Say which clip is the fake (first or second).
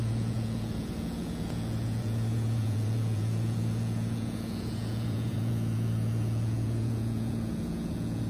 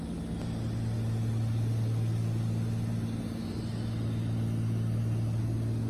first